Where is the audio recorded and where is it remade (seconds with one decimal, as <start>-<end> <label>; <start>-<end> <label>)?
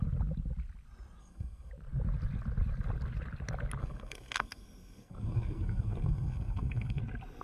0.0-1.2 recorded; 1.2-1.7 remade; 1.7-3.8 recorded; 3.8-7.0 remade; 7.0-7.4 recorded